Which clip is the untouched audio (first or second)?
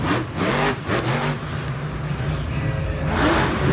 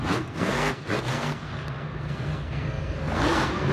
first